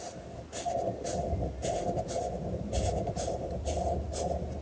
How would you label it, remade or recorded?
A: recorded